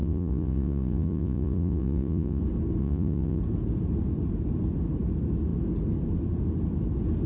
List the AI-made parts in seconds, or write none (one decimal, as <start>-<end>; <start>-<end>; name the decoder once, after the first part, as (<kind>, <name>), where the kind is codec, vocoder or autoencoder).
0.0-2.4 (vocoder, Vocos); 2.8-3.4